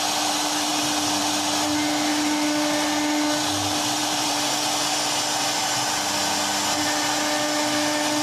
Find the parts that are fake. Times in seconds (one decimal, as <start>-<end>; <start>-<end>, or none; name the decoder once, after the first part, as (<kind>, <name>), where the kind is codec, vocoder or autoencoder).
4.0-4.5 (vocoder, BigVGAN v2)